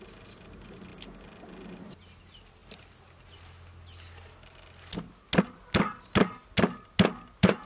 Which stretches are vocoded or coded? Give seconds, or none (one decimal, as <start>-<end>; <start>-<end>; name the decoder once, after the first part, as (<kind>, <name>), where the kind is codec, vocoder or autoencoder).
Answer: none